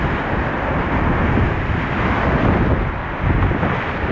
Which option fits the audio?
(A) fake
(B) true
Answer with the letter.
B